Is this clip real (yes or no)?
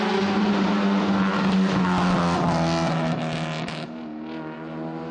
yes